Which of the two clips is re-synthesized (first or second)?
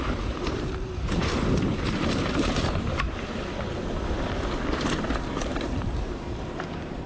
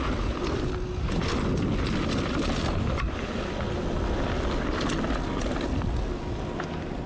first